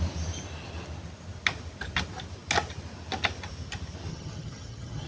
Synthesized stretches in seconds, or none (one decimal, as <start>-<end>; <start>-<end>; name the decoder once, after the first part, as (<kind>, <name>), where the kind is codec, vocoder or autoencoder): 4.1-5.1 (vocoder, HiFi-GAN)